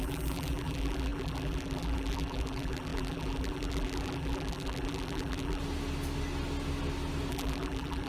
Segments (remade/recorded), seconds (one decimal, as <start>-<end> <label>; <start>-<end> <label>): 0.0-5.6 remade; 5.6-7.3 recorded; 7.3-8.1 remade